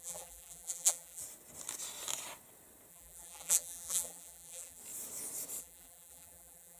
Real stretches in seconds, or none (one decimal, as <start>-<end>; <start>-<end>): 1.2-2.9; 4.8-5.6